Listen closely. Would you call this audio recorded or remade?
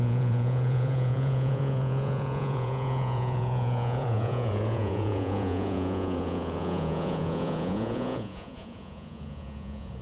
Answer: remade